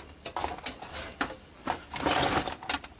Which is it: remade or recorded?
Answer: recorded